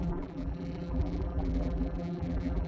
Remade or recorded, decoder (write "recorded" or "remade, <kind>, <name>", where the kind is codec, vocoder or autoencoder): remade, vocoder, BigVGAN v2